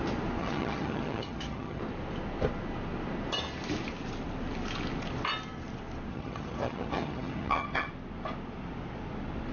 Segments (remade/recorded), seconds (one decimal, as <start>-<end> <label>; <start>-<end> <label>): 0.0-0.4 recorded; 0.4-1.8 remade; 1.8-6.1 recorded; 6.1-7.9 remade; 7.9-9.5 recorded